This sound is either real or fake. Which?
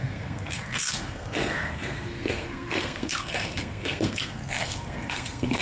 fake